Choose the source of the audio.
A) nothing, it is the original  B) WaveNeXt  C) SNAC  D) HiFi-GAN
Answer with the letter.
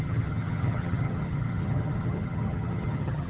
D